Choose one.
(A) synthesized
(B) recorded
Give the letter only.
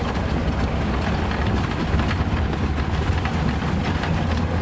B